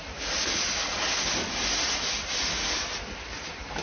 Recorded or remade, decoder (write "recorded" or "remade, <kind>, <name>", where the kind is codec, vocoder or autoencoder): recorded